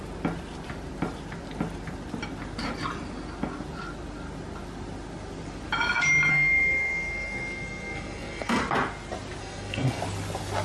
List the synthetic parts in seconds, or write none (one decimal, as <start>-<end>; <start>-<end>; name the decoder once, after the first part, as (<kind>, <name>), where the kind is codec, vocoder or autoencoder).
6.3-8.6 (codec, SNAC); 9.4-10.0